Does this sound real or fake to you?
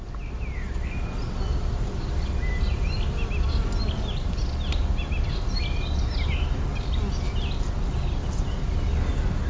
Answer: real